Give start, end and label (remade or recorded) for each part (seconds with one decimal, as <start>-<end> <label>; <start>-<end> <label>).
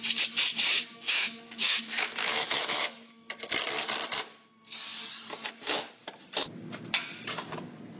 0.0-0.7 recorded; 0.7-3.4 remade; 3.4-8.0 recorded